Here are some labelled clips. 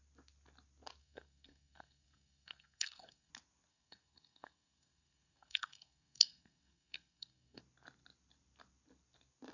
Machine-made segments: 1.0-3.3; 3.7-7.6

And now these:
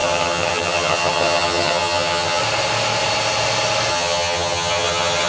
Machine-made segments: 0.0-2.4; 3.9-5.3